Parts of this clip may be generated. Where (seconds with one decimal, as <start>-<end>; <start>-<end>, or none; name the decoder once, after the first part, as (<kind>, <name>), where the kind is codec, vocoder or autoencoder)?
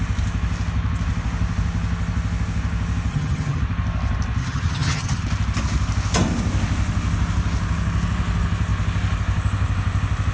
3.1-3.6 (vocoder, HiFi-GAN); 4.4-5.2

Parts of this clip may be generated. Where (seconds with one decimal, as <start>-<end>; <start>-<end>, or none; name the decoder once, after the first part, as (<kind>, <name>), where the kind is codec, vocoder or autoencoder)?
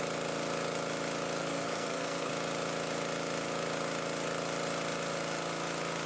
1.4-2.3 (codec, SNAC)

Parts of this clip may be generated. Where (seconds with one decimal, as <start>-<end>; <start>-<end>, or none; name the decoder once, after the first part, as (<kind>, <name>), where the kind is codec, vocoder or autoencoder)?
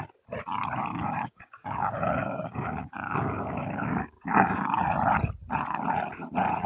0.9-4.8 (codec, DAC)